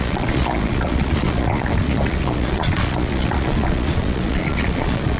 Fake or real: fake